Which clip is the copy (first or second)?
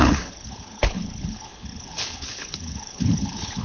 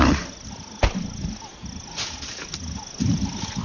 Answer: first